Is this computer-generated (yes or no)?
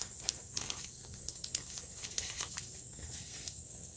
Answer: yes